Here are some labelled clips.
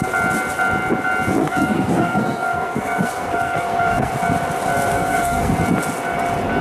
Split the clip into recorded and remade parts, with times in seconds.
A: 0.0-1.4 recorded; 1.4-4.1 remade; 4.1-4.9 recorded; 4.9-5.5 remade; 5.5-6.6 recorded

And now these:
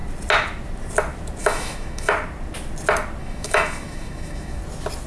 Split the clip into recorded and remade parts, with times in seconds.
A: 0.0-1.4 recorded; 1.4-2.1 remade; 2.1-3.2 recorded; 3.2-4.6 remade; 4.6-5.1 recorded

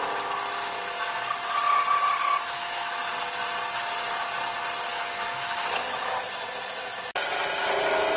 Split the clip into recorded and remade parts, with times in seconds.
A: 0.0-2.2 recorded; 2.2-3.1 remade; 3.1-4.9 recorded; 4.9-6.3 remade; 6.3-8.2 recorded

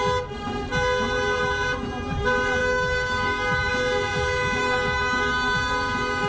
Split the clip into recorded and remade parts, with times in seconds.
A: 0.0-2.6 recorded; 2.6-3.7 remade; 3.7-4.6 recorded; 4.6-6.3 remade

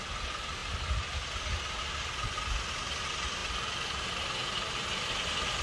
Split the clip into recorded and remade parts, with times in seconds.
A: 0.0-5.6 recorded

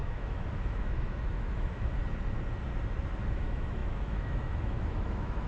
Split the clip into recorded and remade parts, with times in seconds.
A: 0.0-2.0 remade; 2.0-3.3 recorded; 3.3-5.5 remade

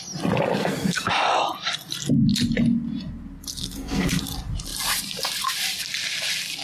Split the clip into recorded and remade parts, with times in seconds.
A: 0.0-0.6 recorded; 0.6-1.1 remade; 1.1-3.5 recorded; 3.5-4.2 remade; 4.2-6.6 recorded

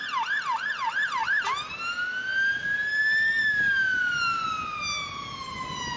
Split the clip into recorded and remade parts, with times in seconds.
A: 0.0-6.0 recorded